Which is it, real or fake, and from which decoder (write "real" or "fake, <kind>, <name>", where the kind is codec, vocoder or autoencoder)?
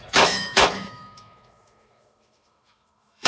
fake, autoencoder, DAC-VAE